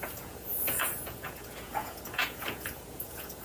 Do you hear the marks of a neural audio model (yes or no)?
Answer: yes